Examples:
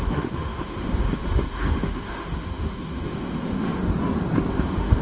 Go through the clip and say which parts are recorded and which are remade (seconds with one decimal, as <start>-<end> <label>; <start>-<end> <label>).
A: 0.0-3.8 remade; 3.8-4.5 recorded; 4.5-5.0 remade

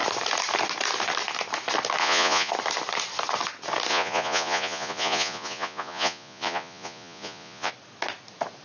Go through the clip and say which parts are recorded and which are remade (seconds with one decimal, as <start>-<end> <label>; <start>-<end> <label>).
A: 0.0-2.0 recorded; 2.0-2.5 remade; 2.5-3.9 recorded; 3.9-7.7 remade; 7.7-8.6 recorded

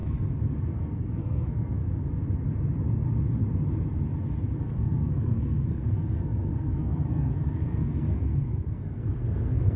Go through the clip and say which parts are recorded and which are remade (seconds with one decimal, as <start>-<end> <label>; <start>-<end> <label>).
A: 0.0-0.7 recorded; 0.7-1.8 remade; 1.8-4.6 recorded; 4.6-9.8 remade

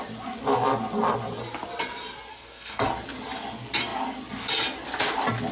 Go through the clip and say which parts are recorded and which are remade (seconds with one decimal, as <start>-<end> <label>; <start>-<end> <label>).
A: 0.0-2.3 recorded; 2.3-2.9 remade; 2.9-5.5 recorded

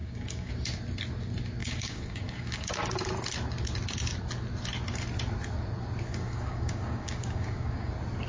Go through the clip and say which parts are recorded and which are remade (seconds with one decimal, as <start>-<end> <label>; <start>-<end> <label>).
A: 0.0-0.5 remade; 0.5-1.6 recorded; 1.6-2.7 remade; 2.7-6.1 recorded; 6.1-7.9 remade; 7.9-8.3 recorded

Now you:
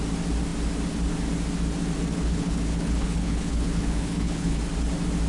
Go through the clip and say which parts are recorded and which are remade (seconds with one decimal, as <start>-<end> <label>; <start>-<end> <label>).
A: 0.0-2.1 recorded; 2.1-4.6 remade; 4.6-5.3 recorded

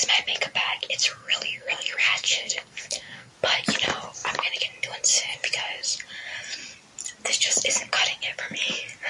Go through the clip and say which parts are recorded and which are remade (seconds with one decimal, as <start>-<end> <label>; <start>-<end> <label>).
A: 0.0-1.2 recorded; 1.2-3.3 remade; 3.3-9.1 recorded